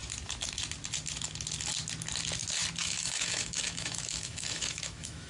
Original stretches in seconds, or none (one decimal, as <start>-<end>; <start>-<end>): 0.0-2.8